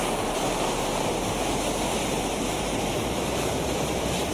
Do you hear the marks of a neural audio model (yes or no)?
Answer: yes